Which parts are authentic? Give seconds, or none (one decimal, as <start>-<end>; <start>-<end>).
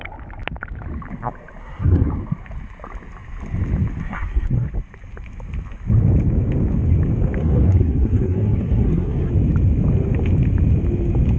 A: 0.0-1.6; 2.1-4.0; 4.7-7.4; 9.3-11.4